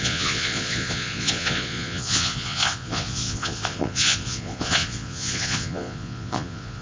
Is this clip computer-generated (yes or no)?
yes